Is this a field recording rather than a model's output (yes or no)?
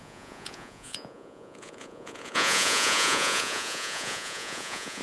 no